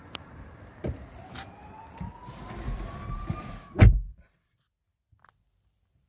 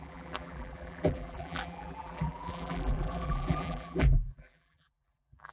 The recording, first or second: first